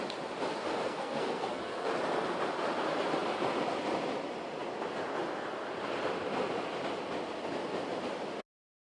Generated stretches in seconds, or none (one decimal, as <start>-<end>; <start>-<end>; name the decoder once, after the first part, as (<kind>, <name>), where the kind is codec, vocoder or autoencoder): 0.5-1.9 (codec, SNAC)